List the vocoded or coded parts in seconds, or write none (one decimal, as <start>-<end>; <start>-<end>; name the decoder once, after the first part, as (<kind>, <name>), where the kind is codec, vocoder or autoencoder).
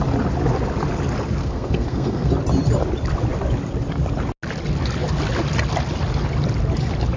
1.4-2.3 (codec, SNAC)